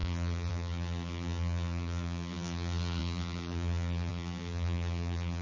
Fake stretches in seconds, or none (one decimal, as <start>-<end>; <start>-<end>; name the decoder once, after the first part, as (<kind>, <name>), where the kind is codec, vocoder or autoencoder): 0.0-5.4 (vocoder, BigVGAN v2)